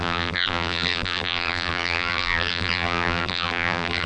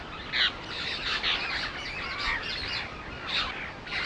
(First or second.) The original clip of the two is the second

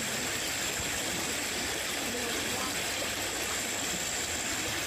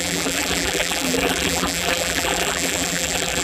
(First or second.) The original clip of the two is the first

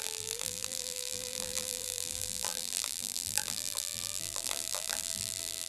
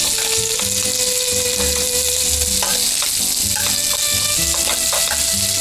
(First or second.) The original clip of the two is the second